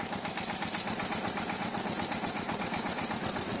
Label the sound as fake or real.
real